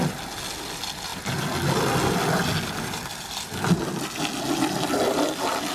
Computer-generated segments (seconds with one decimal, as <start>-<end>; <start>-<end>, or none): none